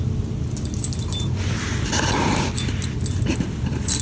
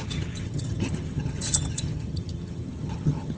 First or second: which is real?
first